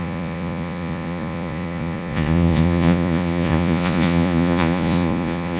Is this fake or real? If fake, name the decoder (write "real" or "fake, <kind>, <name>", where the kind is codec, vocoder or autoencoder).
fake, vocoder, Vocos